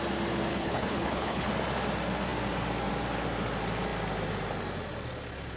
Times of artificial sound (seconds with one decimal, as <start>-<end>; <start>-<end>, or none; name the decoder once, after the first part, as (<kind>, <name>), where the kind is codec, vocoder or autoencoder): 0.5-1.5 (codec, HILCodec)

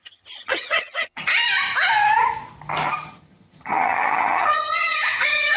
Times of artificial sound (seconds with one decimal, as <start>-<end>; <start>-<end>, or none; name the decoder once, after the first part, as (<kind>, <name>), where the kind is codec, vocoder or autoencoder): 0.0-1.3 (vocoder, HiFi-GAN); 2.9-5.6

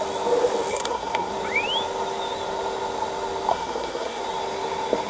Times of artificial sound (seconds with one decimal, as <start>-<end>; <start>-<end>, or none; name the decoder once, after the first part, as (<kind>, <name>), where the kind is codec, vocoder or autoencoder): 0.7-1.3 (codec, SNAC); 3.5-4.2

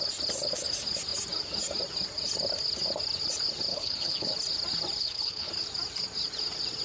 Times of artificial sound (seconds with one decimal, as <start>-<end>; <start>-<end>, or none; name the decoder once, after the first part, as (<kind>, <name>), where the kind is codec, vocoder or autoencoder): 3.7-4.3 (codec, HILCodec); 5.0-5.5

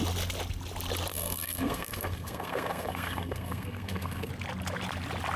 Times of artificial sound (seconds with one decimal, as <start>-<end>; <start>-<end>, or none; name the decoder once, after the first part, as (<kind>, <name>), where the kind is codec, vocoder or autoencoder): 1.1-4.3 (codec, SNAC)